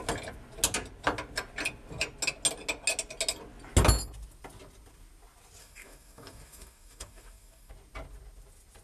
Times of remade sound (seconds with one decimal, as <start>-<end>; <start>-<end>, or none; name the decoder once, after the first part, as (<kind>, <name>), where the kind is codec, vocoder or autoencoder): 5.6-7.7 (codec, DAC)